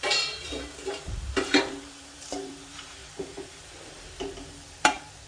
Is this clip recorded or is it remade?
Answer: remade